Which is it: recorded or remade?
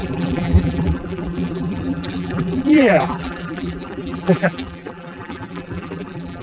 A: remade